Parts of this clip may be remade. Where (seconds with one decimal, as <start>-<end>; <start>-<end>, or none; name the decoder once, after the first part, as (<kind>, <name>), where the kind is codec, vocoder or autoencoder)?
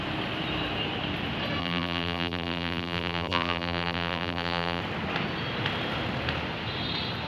1.6-4.8 (vocoder, BigVGAN v2)